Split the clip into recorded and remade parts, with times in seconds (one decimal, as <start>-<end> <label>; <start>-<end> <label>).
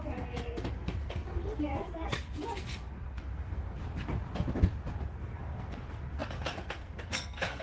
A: 0.0-3.8 remade; 3.8-5.0 recorded; 5.0-7.6 remade